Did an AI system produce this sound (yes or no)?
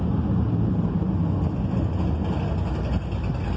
no